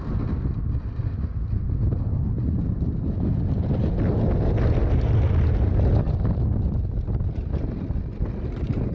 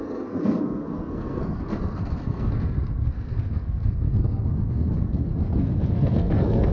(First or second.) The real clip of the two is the first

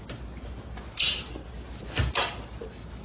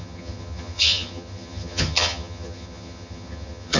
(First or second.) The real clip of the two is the first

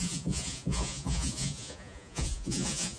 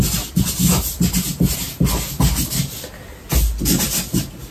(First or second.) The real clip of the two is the second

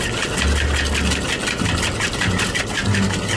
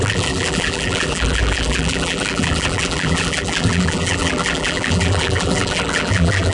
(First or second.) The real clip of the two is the first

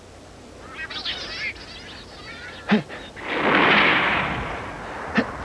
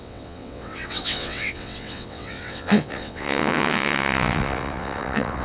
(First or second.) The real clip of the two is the first